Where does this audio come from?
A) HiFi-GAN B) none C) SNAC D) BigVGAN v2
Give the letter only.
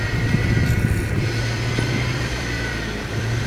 D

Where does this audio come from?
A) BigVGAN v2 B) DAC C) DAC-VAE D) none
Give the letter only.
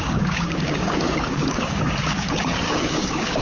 B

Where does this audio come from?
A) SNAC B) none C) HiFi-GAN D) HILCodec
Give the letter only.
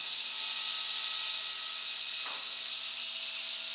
B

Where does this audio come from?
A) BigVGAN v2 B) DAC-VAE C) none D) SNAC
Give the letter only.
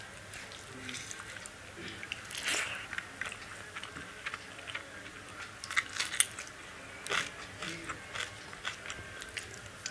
C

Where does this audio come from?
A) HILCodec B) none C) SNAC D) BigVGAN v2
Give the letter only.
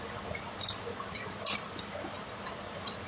D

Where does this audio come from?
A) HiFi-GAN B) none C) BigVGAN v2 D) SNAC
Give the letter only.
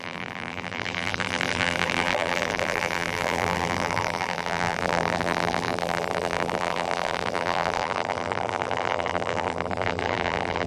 C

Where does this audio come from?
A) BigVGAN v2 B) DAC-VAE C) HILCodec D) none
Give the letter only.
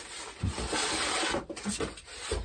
D